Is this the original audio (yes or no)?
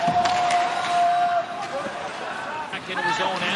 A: no